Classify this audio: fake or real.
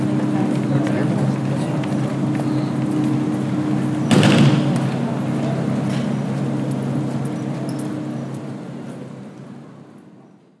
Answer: real